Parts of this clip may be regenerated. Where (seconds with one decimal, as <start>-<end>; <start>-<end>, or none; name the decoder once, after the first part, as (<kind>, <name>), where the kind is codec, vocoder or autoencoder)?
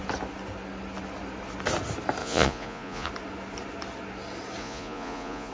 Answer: 2.2-3.1 (vocoder, Vocos); 4.6-5.5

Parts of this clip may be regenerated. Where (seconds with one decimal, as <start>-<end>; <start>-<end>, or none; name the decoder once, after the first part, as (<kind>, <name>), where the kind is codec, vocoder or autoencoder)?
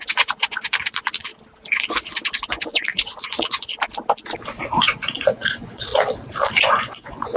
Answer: 0.0-1.3 (vocoder, Vocos); 2.5-3.7; 4.8-5.9; 6.5-7.4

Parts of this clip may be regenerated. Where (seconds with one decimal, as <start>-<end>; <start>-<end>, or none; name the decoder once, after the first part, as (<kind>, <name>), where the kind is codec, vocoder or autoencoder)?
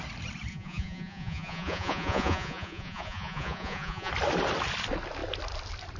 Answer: 0.5-4.1 (vocoder, Vocos)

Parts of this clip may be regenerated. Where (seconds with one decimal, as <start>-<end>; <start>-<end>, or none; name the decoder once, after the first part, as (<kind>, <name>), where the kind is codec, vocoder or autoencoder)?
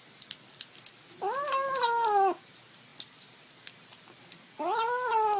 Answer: none